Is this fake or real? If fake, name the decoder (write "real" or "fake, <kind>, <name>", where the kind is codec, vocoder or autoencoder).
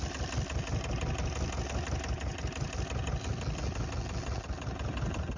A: real